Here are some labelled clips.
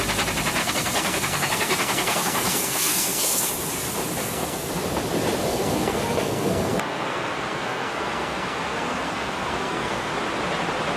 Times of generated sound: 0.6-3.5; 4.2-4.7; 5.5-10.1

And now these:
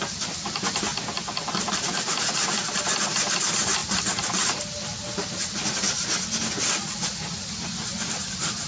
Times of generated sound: none

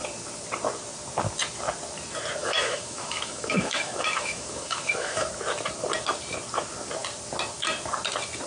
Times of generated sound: 2.4-5.3

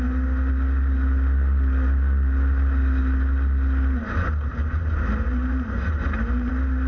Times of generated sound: 4.5-6.5